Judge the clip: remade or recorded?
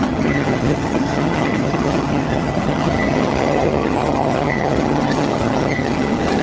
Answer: remade